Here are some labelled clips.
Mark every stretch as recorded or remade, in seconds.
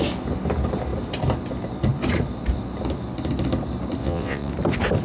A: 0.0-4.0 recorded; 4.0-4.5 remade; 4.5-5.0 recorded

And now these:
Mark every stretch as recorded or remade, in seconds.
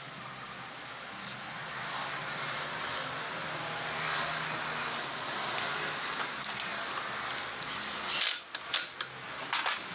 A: 0.0-9.9 recorded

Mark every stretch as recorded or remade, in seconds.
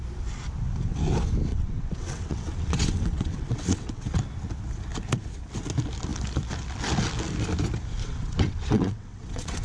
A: 0.0-1.5 recorded; 1.5-4.2 remade; 4.2-8.0 recorded; 8.0-9.6 remade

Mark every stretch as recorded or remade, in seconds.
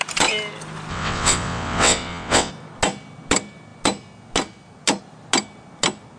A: 0.0-0.9 recorded; 0.9-2.5 remade; 2.5-6.2 recorded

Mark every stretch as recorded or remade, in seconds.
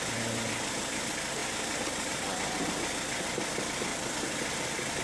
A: 0.0-5.0 recorded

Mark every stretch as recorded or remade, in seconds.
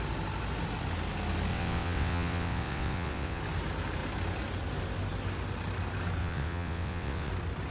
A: 0.0-1.5 recorded; 1.5-3.4 remade; 3.4-6.2 recorded; 6.2-7.3 remade; 7.3-7.7 recorded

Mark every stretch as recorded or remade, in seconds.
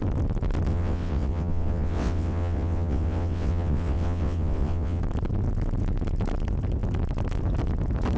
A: 0.0-0.7 recorded; 0.7-5.0 remade; 5.0-8.2 recorded